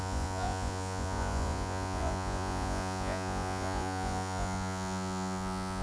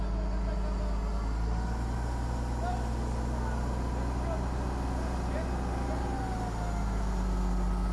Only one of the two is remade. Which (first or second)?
first